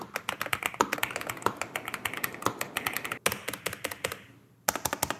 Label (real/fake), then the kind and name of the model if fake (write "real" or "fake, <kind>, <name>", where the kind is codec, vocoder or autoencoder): real